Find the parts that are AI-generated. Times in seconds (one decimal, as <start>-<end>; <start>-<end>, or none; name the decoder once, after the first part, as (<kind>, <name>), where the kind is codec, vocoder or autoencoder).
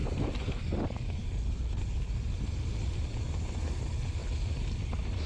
none